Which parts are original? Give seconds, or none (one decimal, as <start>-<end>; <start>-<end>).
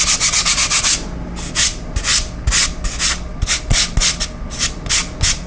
0.0-5.5